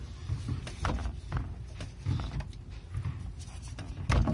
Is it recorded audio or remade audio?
recorded